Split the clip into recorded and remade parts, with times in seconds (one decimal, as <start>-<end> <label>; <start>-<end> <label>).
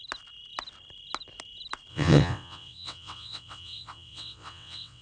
0.0-1.9 recorded; 1.9-5.0 remade